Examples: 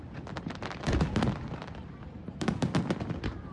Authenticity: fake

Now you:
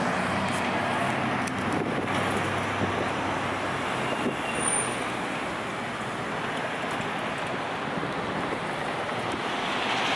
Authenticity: real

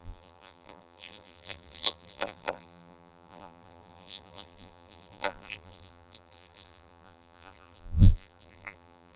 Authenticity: fake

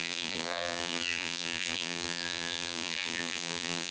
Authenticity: fake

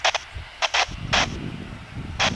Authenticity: real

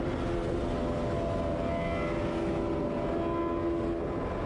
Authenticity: real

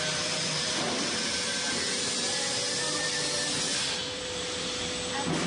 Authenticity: fake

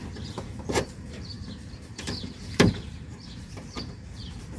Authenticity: fake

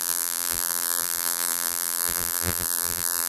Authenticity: fake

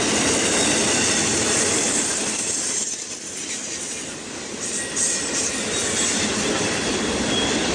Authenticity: fake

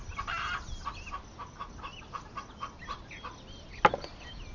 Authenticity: real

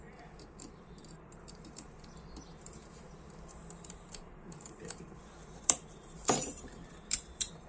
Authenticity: fake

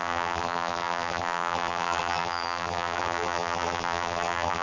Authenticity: fake